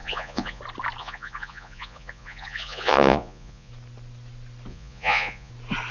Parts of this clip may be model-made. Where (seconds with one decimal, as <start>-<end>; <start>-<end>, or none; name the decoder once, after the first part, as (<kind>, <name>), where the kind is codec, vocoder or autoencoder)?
0.0-0.6 (vocoder, Vocos); 1.0-3.7; 4.7-5.5